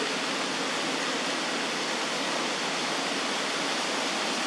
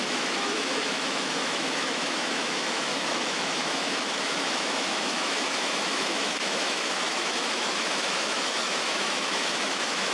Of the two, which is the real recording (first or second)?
first